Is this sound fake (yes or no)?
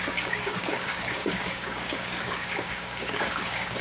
yes